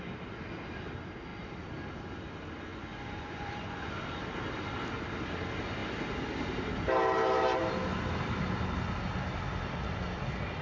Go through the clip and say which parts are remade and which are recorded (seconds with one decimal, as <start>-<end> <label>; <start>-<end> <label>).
0.0-2.7 recorded; 2.7-3.9 remade; 3.9-10.6 recorded